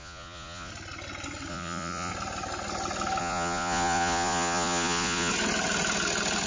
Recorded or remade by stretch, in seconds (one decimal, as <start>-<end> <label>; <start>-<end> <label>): 0.0-0.7 remade; 0.7-1.5 recorded; 1.5-2.1 remade; 2.1-3.2 recorded; 3.2-5.3 remade; 5.3-6.5 recorded